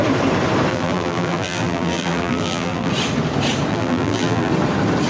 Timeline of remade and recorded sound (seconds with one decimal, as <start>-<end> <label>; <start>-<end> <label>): 0.0-0.7 recorded; 0.7-2.9 remade; 2.9-3.7 recorded; 3.7-4.5 remade; 4.5-5.1 recorded